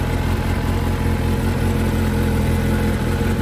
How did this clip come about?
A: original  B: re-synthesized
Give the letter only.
A